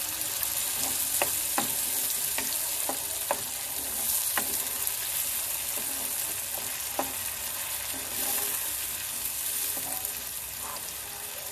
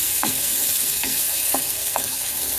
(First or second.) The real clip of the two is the first